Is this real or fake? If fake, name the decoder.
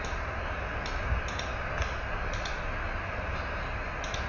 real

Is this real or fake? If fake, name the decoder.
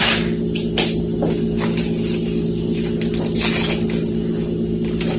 real